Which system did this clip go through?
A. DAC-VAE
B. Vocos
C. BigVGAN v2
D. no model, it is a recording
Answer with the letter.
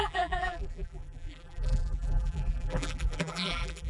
C